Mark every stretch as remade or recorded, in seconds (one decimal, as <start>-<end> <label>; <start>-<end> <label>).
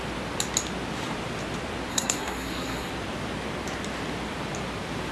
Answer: 0.0-1.9 recorded; 1.9-2.9 remade; 2.9-5.1 recorded